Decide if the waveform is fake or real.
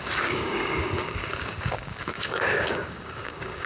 fake